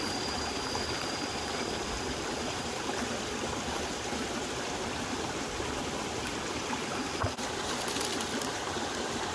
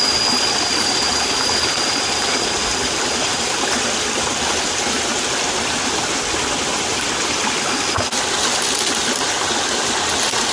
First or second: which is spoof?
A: first